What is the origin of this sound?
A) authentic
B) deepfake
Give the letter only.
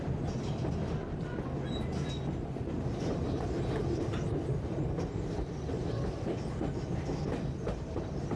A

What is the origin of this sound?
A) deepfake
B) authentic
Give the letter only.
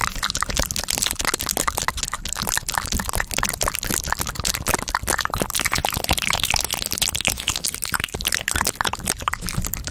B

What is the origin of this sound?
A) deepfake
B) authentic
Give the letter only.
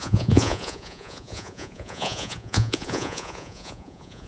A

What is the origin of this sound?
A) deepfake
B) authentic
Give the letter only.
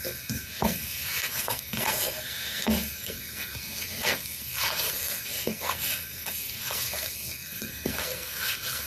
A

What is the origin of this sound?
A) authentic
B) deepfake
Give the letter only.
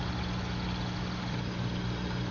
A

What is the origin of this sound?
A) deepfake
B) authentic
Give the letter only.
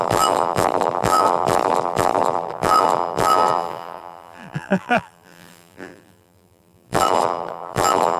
A